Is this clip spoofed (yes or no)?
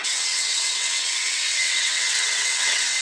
yes